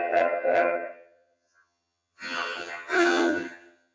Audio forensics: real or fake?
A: fake